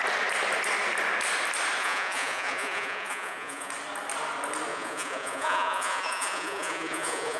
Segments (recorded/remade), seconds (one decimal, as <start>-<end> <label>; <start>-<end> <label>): 0.0-1.8 recorded; 1.8-3.7 remade; 3.7-4.7 recorded; 4.7-7.4 remade